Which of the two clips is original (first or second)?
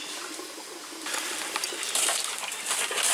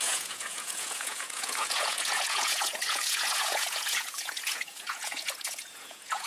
first